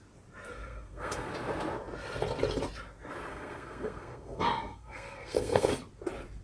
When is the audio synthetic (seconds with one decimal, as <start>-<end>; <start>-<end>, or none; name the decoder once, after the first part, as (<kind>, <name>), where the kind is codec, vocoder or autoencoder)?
0.5-1.3 (codec, SNAC); 3.3-5.7